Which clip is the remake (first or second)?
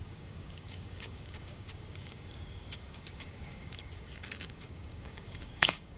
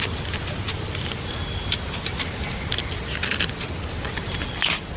first